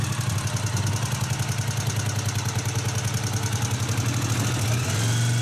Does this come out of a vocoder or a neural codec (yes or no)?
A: no